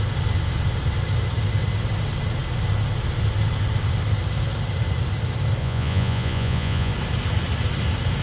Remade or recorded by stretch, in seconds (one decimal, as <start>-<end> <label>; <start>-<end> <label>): 0.0-5.6 recorded; 5.6-6.9 remade; 6.9-8.2 recorded